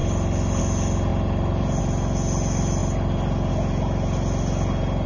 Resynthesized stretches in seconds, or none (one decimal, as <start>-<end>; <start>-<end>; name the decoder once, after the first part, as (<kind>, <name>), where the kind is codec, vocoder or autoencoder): none